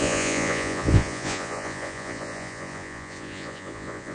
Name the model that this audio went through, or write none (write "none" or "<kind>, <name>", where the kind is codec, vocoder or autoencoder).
vocoder, Vocos